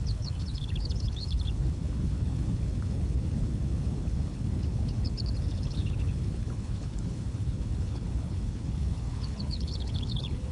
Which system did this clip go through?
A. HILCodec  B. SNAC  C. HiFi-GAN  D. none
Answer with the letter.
A